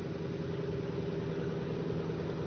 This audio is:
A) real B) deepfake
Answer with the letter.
A